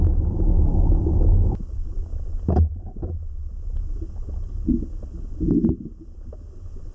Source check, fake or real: real